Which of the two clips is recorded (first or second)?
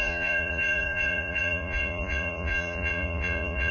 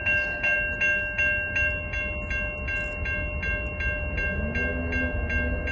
second